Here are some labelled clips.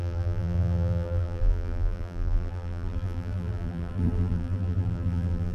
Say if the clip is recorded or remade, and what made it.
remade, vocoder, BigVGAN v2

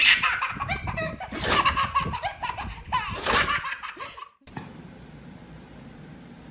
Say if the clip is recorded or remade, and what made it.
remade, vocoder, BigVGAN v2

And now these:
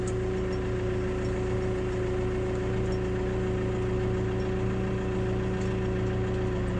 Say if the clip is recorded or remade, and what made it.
recorded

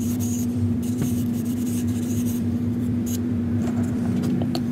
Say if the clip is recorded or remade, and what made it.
remade, vocoder, BigVGAN v2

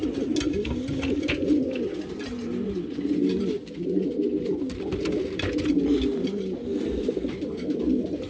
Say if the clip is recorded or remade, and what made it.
recorded